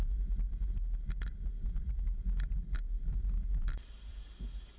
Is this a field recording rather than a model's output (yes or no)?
no